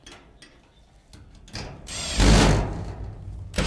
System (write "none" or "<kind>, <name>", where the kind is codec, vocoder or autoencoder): none